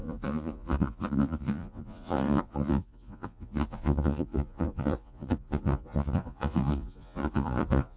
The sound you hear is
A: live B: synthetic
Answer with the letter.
B